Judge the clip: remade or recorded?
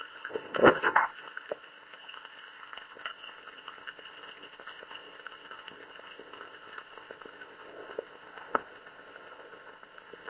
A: remade